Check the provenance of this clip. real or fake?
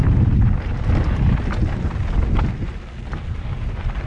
real